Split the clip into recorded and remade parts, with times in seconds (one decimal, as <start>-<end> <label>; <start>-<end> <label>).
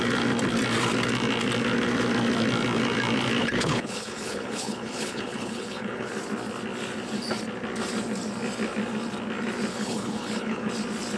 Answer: 0.0-3.4 recorded; 3.4-6.1 remade; 6.1-9.7 recorded; 9.7-10.7 remade; 10.7-11.2 recorded